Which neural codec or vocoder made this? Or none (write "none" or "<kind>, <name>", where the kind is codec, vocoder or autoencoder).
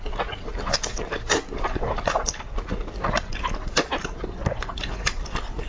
none